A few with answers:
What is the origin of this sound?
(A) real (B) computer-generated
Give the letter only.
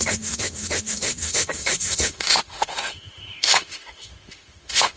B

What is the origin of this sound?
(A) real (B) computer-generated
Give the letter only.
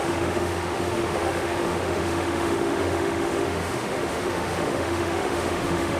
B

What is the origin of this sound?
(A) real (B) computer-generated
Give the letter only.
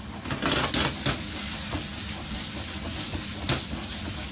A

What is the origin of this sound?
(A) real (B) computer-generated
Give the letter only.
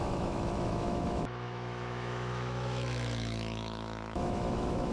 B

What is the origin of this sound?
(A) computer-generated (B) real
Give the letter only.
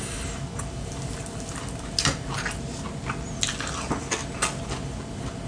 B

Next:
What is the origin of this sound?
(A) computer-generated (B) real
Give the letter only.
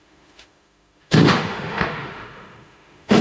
A